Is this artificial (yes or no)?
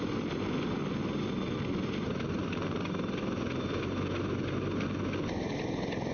no